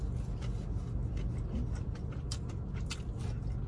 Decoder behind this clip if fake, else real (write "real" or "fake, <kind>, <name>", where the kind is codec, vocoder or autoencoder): real